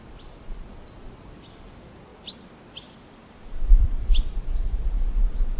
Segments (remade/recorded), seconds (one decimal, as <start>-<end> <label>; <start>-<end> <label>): 0.0-2.1 recorded; 2.1-4.4 remade; 4.4-5.6 recorded